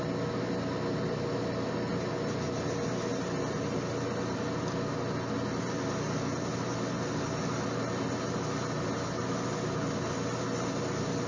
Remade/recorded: recorded